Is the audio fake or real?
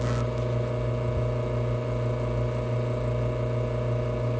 real